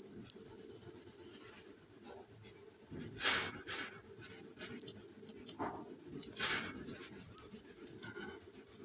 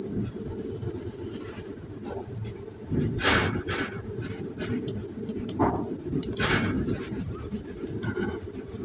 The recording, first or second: first